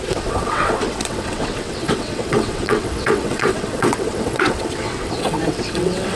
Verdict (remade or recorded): remade